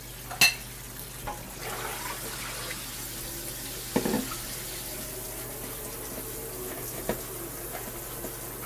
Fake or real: real